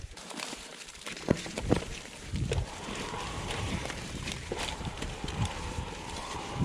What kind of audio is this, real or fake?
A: fake